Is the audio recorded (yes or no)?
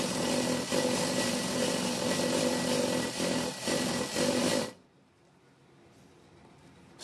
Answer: yes